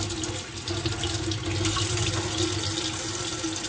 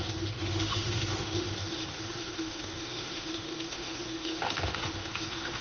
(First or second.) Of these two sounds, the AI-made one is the second